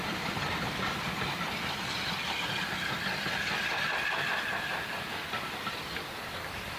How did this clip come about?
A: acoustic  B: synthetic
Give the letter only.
A